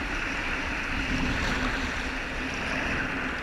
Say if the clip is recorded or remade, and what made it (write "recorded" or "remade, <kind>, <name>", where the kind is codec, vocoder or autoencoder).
recorded